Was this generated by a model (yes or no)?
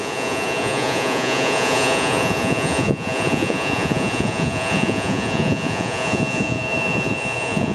yes